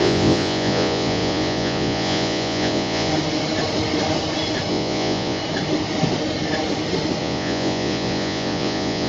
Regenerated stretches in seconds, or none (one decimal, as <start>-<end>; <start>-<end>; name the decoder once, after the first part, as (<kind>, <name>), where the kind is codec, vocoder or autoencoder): 0.0-3.1 (vocoder, Vocos); 4.7-5.4; 7.2-9.1